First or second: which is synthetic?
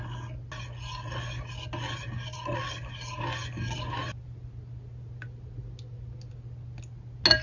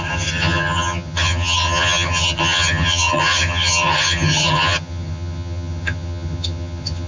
second